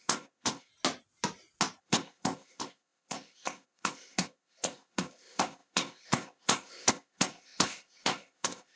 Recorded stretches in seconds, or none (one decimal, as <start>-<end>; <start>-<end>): 0.7-1.8